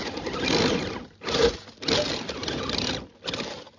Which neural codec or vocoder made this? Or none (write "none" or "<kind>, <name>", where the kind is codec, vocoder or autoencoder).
none